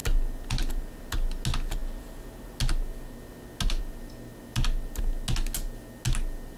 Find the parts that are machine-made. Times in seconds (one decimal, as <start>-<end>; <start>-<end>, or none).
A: none